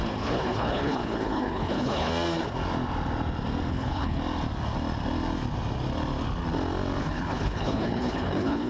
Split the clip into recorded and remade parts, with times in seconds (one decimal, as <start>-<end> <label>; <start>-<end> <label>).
0.0-2.1 remade; 2.1-3.7 recorded; 3.7-4.2 remade; 4.2-7.0 recorded; 7.0-8.7 remade

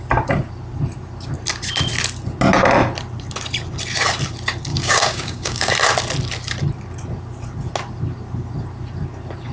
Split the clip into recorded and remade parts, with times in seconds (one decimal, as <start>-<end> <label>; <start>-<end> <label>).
0.0-4.7 recorded; 4.7-5.7 remade; 5.7-9.5 recorded